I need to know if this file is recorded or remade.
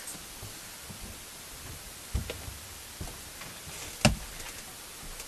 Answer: recorded